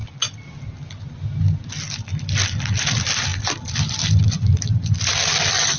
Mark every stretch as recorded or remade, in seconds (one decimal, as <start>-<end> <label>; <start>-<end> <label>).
0.0-5.8 recorded